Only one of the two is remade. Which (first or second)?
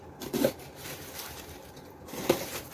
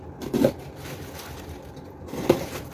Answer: first